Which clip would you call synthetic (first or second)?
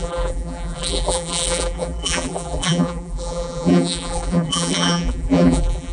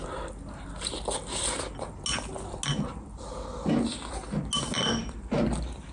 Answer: first